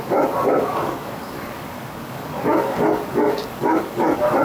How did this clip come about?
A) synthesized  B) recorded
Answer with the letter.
A